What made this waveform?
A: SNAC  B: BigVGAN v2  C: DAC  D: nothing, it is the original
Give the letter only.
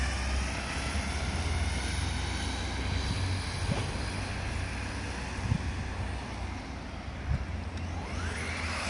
D